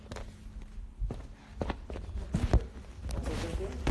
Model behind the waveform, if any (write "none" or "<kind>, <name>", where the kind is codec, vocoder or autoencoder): none